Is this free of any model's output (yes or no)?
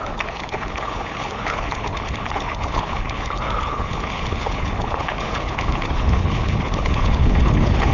no